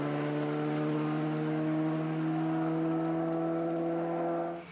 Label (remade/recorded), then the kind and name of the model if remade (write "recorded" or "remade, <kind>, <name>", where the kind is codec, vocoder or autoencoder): recorded